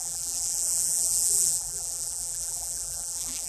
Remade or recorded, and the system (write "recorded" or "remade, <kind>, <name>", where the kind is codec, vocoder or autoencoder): remade, vocoder, BigVGAN v2